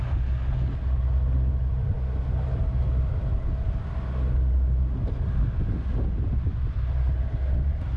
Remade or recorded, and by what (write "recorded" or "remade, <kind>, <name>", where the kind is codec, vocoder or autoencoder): recorded